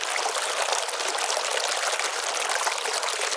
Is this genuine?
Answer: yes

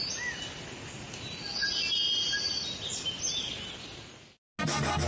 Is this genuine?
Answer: yes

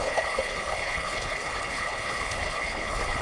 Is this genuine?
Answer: no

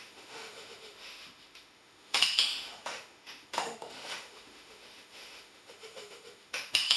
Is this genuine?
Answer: no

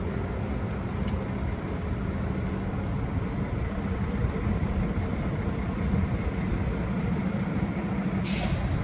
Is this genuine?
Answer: yes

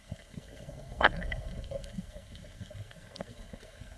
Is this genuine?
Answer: no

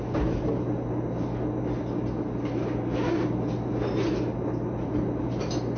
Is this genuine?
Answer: yes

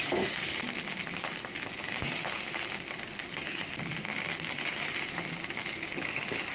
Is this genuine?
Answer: yes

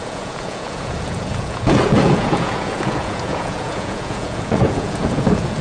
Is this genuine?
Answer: no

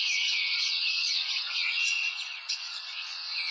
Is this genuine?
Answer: no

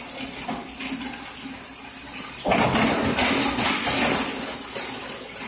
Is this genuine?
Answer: yes